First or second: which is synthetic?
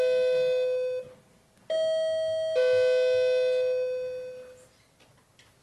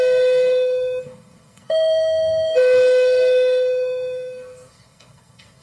second